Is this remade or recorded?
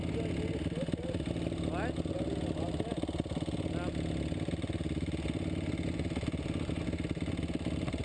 recorded